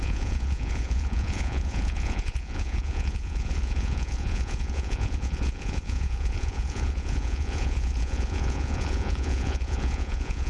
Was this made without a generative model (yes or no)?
no